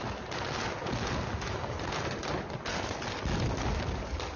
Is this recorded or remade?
recorded